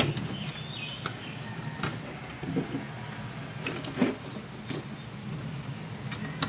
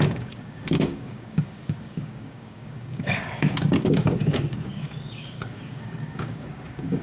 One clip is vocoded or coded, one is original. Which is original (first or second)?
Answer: first